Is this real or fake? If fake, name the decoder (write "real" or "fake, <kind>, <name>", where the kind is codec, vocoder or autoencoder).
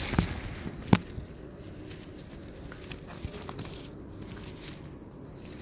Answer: real